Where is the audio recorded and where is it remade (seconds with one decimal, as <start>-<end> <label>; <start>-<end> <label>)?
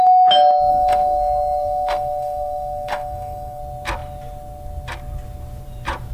0.0-0.7 recorded; 0.7-3.6 remade; 3.6-6.1 recorded